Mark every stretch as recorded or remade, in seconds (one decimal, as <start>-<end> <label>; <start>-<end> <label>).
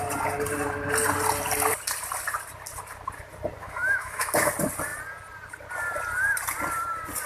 0.0-3.6 recorded; 3.6-4.5 remade; 4.5-7.3 recorded